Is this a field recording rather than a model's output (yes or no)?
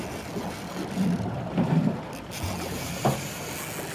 yes